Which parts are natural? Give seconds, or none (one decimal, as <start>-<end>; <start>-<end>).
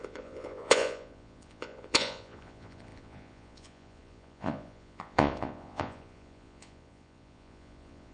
none